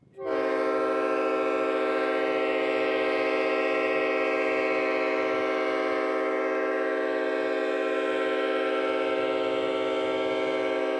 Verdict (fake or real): real